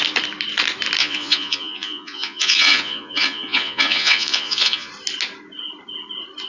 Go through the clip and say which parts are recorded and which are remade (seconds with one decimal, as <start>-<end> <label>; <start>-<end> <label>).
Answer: 0.0-1.0 recorded; 1.0-4.9 remade; 4.9-6.5 recorded